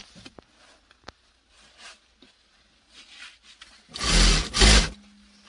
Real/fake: real